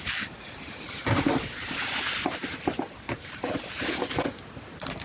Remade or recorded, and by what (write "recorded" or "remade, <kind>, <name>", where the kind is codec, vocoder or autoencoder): recorded